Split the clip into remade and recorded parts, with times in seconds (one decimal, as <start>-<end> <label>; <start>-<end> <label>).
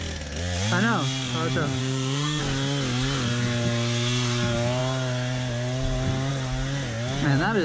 0.0-1.8 recorded; 1.8-2.4 remade; 2.4-7.6 recorded